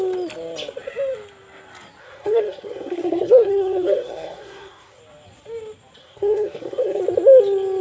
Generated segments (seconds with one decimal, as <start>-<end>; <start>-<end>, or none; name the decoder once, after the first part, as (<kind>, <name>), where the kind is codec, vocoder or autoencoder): 2.0-5.0 (codec, SNAC); 6.0-7.0